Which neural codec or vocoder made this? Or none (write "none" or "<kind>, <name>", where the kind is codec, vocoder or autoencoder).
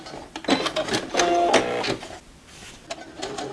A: none